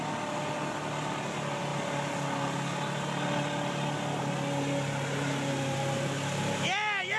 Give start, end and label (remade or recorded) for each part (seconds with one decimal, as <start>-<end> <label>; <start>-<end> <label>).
0.0-7.2 recorded